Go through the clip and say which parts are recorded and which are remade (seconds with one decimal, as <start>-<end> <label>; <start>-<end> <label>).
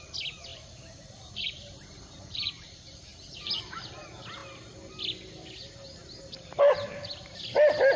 0.0-0.5 recorded; 0.5-2.5 remade; 2.5-3.1 recorded; 3.1-3.8 remade; 3.8-8.0 recorded